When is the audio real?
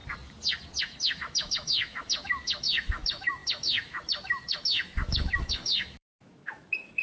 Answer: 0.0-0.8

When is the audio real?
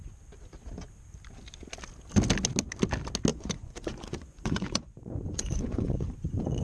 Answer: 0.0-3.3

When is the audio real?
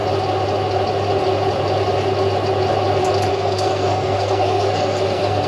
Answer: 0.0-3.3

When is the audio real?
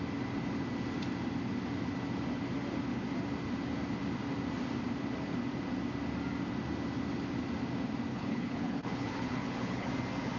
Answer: 0.0-8.1; 9.9-10.4